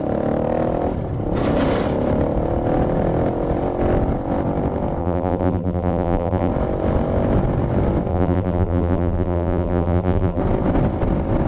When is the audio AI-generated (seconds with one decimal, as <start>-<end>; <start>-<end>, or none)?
5.0-6.5; 8.1-10.4